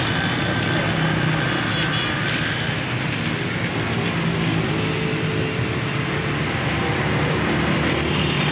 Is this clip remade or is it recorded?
recorded